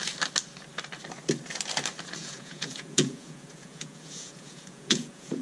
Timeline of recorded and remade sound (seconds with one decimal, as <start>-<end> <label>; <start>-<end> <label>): 0.0-2.2 recorded; 2.2-5.4 remade